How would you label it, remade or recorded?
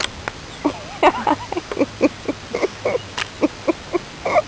recorded